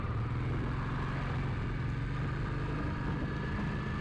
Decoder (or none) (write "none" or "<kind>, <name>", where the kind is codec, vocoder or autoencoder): none